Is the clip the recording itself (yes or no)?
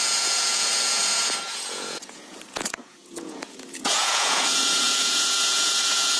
no